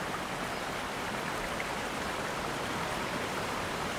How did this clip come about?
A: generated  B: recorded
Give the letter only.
B